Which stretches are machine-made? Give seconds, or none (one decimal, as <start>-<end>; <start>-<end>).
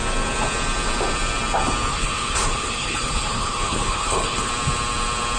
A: 1.9-4.5